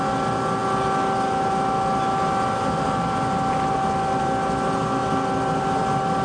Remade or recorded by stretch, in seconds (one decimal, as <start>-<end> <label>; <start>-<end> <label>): 0.0-6.2 recorded